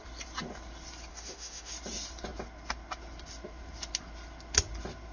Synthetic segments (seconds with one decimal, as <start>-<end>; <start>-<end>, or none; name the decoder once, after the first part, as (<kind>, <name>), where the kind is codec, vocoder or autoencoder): 1.1-1.7 (autoencoder, DAC-VAE)